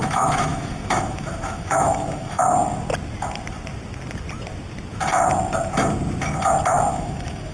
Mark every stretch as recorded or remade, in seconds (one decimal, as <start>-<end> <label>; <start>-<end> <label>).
0.0-2.4 remade; 2.4-6.9 recorded; 6.9-7.5 remade